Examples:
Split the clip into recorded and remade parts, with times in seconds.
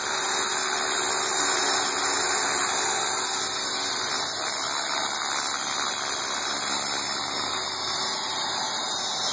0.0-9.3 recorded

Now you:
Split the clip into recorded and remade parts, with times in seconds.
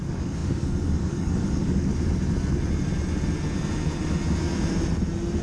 0.0-1.9 remade; 1.9-5.4 recorded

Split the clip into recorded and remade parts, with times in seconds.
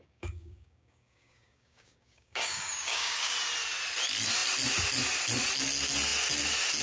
0.0-3.3 remade; 3.3-6.8 recorded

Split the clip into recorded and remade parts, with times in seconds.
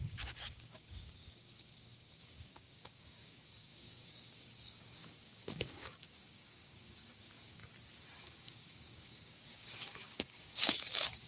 0.0-7.6 remade; 7.6-8.2 recorded; 8.2-11.3 remade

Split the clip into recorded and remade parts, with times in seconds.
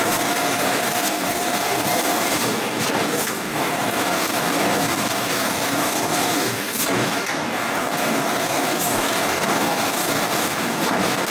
0.0-11.3 remade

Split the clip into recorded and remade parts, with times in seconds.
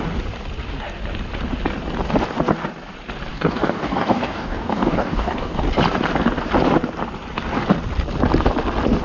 0.0-3.3 recorded; 3.3-5.6 remade; 5.6-9.0 recorded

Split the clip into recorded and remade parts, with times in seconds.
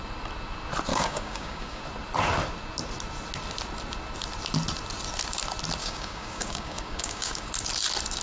0.0-0.9 recorded; 0.9-1.8 remade; 1.8-5.8 recorded; 5.8-7.5 remade; 7.5-8.2 recorded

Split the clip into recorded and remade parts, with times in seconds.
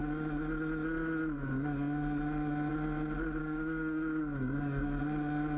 0.0-3.4 recorded; 3.4-5.0 remade; 5.0-5.6 recorded